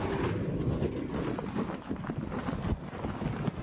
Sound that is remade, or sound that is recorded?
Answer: recorded